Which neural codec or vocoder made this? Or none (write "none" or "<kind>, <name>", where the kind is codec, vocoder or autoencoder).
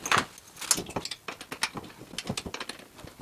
none